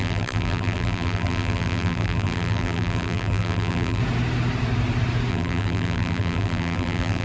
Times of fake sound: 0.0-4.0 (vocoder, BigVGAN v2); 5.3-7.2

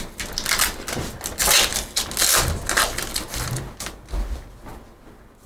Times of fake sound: none

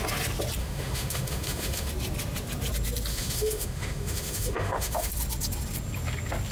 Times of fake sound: 0.6-1.9 (autoencoder, DAC-VAE); 3.1-5.1

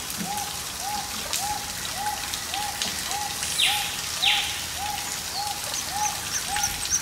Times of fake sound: none

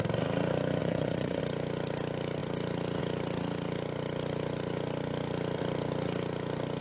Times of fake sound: 0.8-1.4 (vocoder, Vocos)

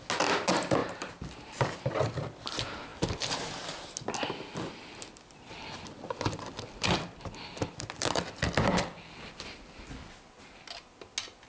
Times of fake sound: 0.8-1.8 (vocoder, BigVGAN v2)

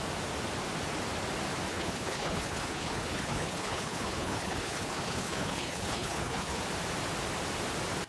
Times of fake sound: 1.7-6.6 (codec, HILCodec)

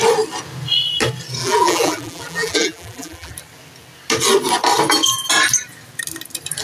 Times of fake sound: 1.4-3.3 (vocoder, BigVGAN v2)